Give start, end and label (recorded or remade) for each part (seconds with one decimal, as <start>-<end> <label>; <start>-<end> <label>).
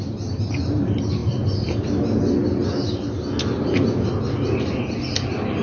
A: 0.0-5.6 recorded